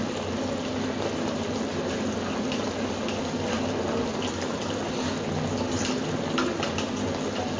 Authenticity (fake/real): real